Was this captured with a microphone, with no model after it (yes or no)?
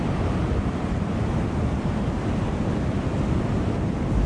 yes